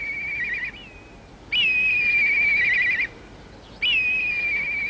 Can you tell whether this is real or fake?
real